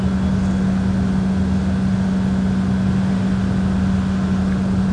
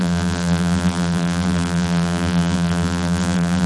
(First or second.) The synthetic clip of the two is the second